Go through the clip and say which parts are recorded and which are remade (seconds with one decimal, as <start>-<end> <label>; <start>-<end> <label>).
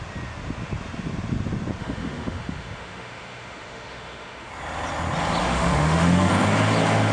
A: 0.0-1.8 recorded; 1.8-4.5 remade; 4.5-5.4 recorded; 5.4-6.3 remade; 6.3-7.1 recorded